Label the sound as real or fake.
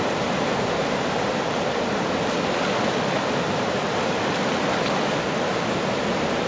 real